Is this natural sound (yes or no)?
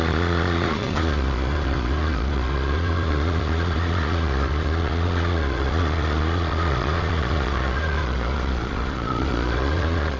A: no